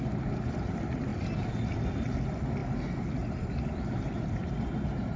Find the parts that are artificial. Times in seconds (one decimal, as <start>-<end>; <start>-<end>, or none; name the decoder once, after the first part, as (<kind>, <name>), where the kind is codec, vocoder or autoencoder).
2.6-4.7 (vocoder, BigVGAN v2)